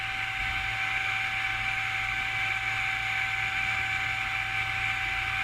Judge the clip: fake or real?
real